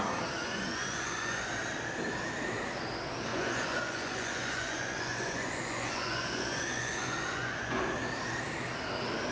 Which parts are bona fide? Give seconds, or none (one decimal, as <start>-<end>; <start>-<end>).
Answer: 0.0-0.4; 1.4-3.3; 7.9-9.3